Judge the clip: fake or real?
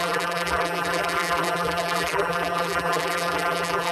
fake